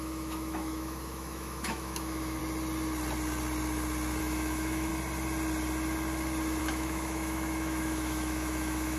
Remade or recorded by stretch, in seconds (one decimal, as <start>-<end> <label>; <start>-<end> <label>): 0.0-2.4 remade; 2.4-4.2 recorded; 4.2-4.9 remade; 4.9-6.6 recorded; 6.6-9.0 remade